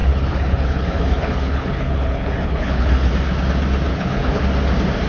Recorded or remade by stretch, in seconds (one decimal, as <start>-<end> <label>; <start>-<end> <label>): 0.0-3.1 remade; 3.1-3.9 recorded; 3.9-4.4 remade; 4.4-5.1 recorded